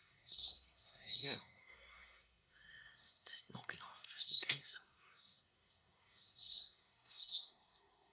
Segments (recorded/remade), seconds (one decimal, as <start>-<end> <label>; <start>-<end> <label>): 0.0-8.1 remade